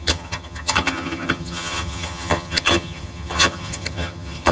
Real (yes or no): no